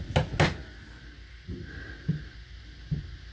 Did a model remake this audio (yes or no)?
no